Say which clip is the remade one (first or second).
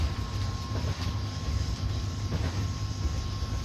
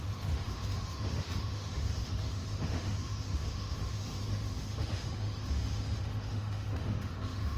second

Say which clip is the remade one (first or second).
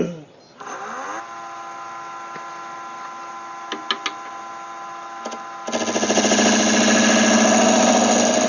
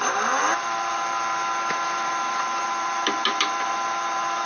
second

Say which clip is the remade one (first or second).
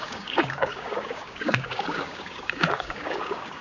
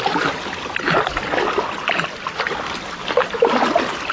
first